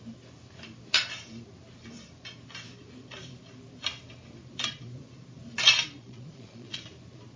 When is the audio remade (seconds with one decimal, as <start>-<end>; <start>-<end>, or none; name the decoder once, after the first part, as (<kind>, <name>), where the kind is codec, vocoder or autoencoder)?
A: 6.0-6.8 (vocoder, Vocos)